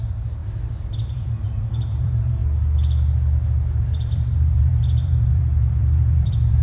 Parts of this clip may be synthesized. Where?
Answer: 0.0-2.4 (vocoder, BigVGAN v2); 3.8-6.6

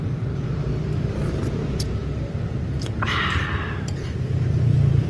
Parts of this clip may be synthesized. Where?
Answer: 0.0-5.1 (vocoder, BigVGAN v2)

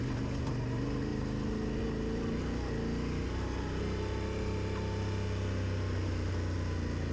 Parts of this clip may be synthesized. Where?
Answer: none